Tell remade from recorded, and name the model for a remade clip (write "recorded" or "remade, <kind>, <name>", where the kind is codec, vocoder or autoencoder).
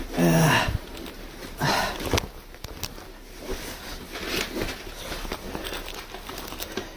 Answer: recorded